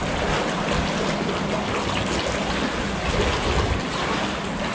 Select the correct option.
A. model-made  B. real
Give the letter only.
B